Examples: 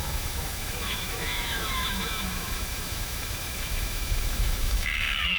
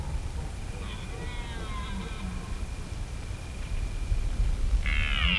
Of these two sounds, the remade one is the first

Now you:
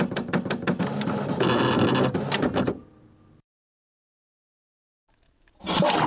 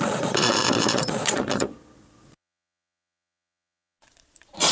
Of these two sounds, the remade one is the second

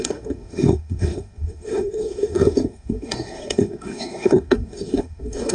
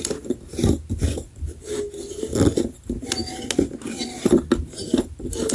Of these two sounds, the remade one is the first